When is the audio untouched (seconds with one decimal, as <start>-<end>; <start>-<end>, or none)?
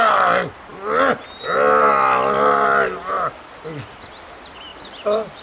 0.0-4.7